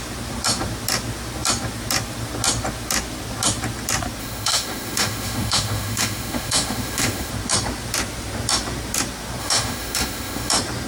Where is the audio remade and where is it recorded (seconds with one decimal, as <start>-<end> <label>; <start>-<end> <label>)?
0.0-4.2 recorded; 4.2-7.3 remade; 7.3-9.4 recorded; 9.4-10.5 remade; 10.5-10.9 recorded